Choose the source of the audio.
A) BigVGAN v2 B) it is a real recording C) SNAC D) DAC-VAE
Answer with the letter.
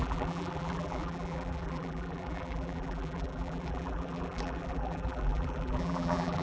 A